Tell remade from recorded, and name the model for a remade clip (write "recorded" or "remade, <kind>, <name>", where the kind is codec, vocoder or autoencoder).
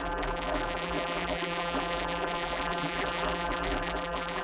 remade, vocoder, BigVGAN v2